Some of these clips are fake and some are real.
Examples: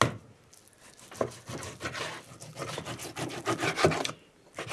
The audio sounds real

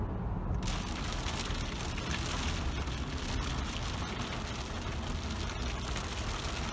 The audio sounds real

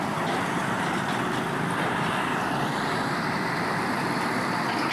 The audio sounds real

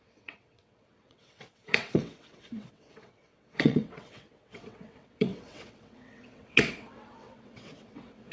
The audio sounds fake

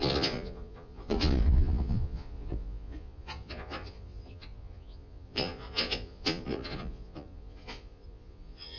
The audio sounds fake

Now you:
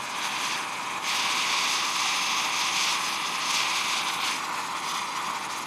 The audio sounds real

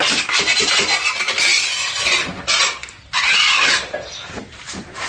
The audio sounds real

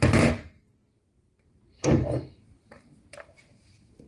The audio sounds fake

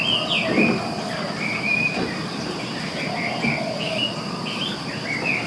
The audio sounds real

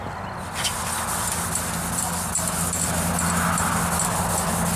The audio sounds real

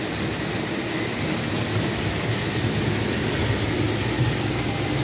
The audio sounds real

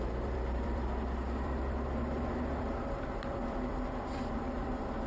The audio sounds fake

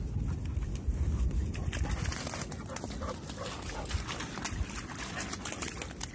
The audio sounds real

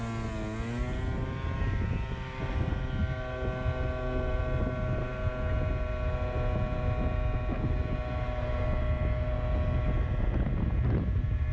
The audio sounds real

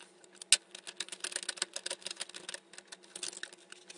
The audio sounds real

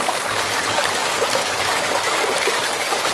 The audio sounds fake